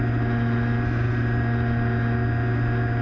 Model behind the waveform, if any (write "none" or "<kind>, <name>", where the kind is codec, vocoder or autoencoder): none